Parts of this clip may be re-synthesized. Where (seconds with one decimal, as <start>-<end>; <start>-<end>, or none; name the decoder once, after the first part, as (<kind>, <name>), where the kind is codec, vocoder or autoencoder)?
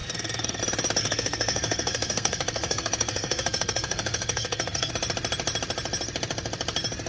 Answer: 0.0-0.6 (codec, SNAC); 1.0-4.9